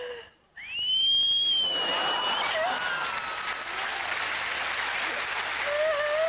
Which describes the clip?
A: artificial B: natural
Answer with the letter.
B